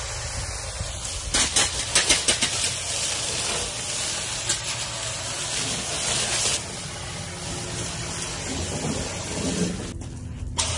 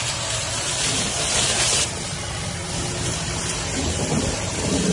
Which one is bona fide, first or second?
first